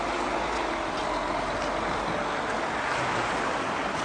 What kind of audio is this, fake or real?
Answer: real